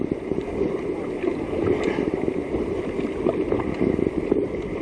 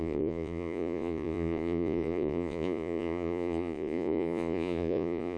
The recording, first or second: first